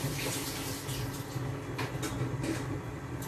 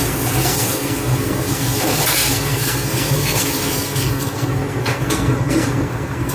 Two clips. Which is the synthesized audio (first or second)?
second